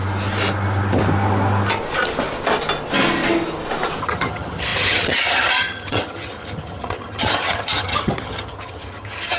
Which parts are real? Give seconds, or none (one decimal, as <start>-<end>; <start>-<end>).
0.0-4.0